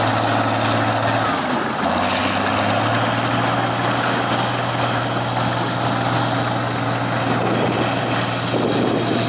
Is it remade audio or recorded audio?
recorded